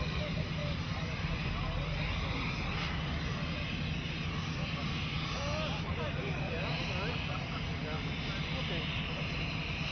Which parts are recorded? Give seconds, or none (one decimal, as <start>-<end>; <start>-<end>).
0.6-5.8; 7.8-9.1